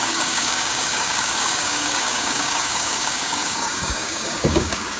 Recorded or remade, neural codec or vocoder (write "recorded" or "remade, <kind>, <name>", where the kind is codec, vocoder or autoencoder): remade, codec, DAC